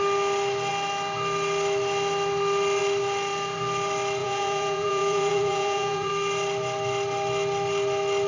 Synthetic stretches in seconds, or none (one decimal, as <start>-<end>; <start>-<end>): 4.2-6.1